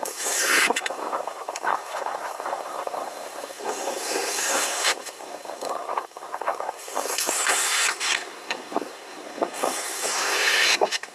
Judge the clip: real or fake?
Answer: fake